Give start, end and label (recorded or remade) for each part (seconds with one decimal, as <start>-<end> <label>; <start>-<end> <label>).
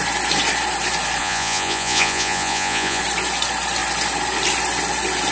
0.0-1.2 recorded; 1.2-3.0 remade; 3.0-5.3 recorded